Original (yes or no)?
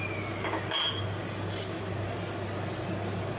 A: yes